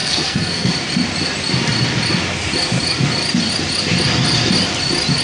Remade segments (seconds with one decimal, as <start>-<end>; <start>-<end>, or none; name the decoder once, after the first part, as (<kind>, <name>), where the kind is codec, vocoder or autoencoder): 0.0-0.7 (codec, SNAC)